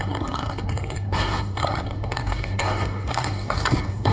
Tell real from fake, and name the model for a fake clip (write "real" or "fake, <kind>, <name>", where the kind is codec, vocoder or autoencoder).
fake, codec, SNAC